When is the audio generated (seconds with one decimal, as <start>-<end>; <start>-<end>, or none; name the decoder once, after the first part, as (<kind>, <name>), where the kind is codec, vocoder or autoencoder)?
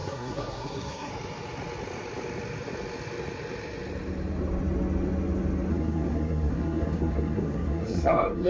0.0-1.1 (codec, SNAC); 5.7-8.5